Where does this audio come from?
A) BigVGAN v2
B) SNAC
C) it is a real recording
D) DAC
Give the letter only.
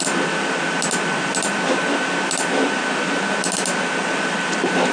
C